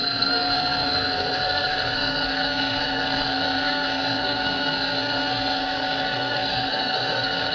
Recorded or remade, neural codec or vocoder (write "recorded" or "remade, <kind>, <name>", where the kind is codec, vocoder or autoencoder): remade, codec, SNAC